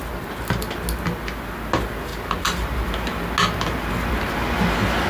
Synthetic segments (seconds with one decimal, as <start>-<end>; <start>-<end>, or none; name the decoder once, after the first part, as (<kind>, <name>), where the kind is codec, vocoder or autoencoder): none